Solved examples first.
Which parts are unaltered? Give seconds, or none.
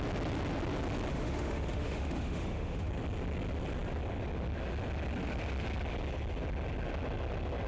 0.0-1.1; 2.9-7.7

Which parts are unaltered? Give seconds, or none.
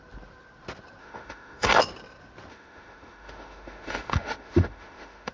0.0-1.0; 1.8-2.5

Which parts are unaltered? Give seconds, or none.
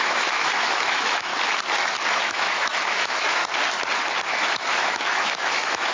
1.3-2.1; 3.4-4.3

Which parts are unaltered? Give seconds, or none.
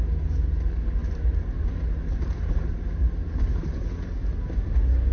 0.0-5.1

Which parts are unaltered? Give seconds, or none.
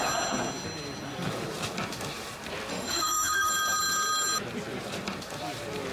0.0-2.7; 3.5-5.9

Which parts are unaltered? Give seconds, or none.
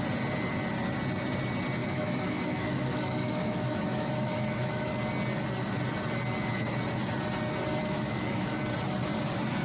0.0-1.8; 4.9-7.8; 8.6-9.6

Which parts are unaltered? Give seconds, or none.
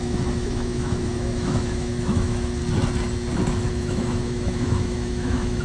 2.6-3.7